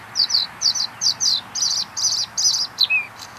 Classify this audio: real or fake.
real